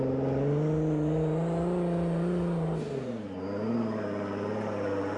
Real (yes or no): yes